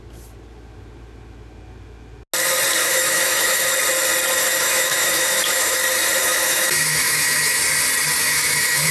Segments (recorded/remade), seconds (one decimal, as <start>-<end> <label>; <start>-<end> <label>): 0.0-2.8 recorded; 2.8-3.7 remade; 3.7-4.5 recorded; 4.5-5.8 remade; 5.8-6.3 recorded; 6.3-7.6 remade; 7.6-8.2 recorded; 8.2-8.9 remade